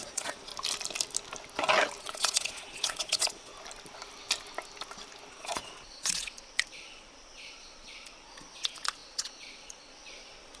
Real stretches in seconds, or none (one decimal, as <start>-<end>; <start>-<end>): 0.5-2.0; 3.5-5.3